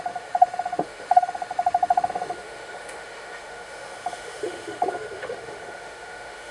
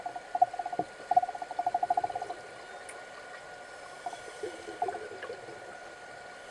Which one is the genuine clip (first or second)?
second